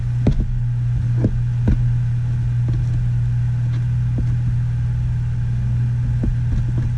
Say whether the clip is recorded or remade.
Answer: recorded